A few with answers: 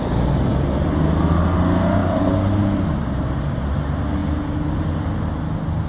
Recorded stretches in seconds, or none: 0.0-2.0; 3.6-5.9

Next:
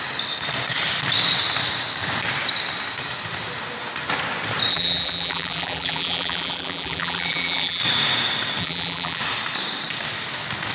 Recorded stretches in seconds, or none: 0.0-4.7; 7.8-8.6; 9.2-10.7